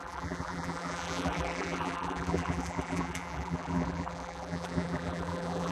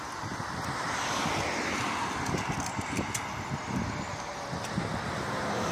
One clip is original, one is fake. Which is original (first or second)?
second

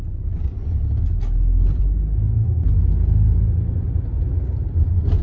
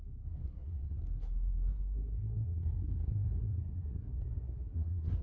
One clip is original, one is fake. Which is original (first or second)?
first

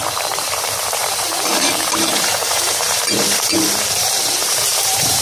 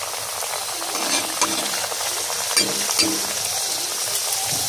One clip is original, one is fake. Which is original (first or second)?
second